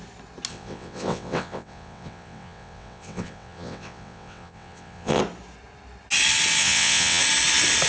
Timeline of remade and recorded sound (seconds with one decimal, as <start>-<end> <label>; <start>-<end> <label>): 0.0-0.5 recorded; 0.5-5.2 remade; 5.2-6.6 recorded; 6.6-7.2 remade; 7.2-7.9 recorded